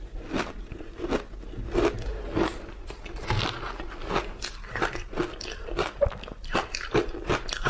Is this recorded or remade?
recorded